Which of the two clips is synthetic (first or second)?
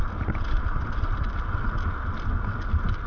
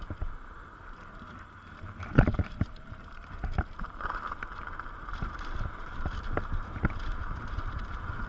second